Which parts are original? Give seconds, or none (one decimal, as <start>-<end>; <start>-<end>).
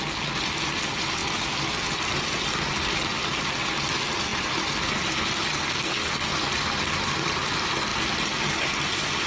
0.0-5.5; 6.3-9.3